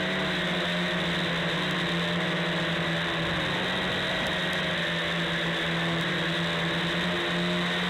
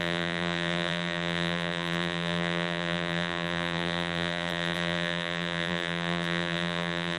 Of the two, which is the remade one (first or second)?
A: second